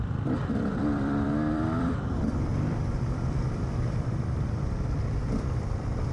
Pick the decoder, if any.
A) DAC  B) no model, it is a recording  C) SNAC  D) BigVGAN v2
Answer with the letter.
D